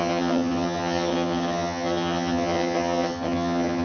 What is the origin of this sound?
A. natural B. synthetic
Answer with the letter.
B